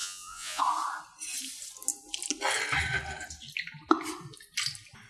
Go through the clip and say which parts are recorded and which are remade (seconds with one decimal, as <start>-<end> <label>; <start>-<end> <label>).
0.0-0.6 remade; 0.6-5.1 recorded